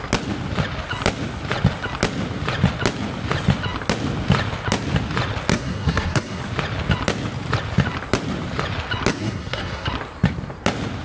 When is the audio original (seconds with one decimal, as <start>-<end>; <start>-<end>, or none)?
0.0-5.5; 6.4-9.1; 9.9-11.0